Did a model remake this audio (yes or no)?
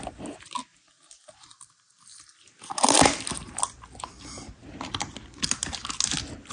no